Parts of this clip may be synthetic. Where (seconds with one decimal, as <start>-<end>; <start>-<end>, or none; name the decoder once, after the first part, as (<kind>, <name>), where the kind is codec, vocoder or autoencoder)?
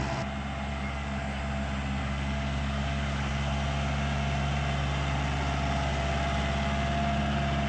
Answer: 0.7-1.4 (codec, DAC); 2.0-3.3